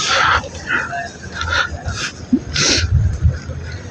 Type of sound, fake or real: real